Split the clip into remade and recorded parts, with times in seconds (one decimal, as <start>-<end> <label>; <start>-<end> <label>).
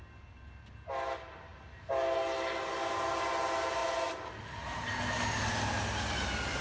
0.0-6.6 recorded